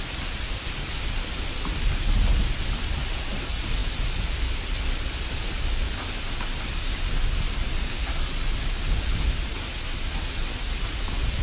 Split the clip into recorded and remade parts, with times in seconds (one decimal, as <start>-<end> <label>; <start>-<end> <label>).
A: 0.0-11.4 recorded